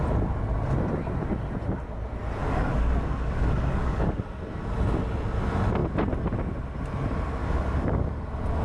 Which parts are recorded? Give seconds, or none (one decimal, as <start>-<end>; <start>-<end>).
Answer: 0.0-2.4; 4.2-7.4; 8.2-8.6